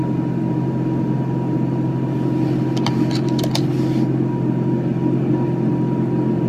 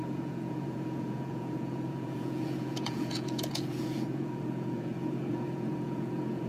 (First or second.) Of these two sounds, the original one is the first